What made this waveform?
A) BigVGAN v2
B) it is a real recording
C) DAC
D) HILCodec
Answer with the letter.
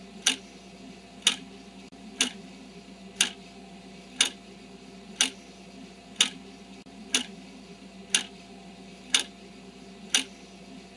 B